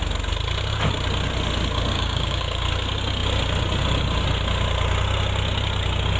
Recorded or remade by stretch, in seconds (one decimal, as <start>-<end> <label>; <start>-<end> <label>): 0.0-1.9 recorded; 1.9-2.7 remade; 2.7-6.2 recorded